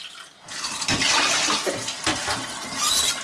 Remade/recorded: recorded